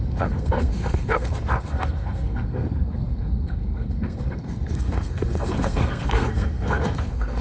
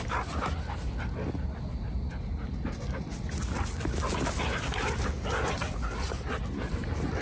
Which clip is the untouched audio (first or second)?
second